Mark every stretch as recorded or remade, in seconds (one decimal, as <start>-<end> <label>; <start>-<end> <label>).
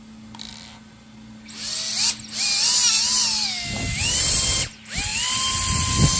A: 0.0-6.2 recorded